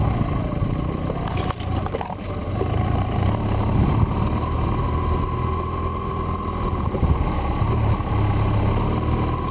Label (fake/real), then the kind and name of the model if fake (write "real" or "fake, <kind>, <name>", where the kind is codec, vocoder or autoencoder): real